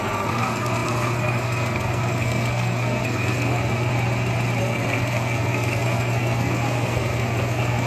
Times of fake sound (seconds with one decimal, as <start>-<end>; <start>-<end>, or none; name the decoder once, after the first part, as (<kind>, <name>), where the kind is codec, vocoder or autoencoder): 0.0-3.9 (codec, SNAC); 4.6-7.9